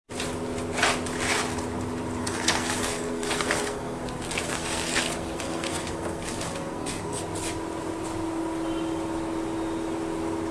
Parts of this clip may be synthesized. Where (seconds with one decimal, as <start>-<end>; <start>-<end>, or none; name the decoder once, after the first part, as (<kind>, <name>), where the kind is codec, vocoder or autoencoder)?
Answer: 2.2-7.2 (codec, SNAC)